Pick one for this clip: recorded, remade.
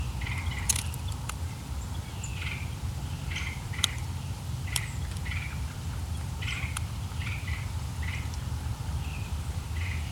remade